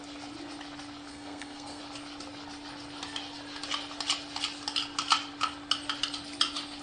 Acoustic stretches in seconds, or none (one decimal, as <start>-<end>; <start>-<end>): 0.0-1.1; 1.8-6.8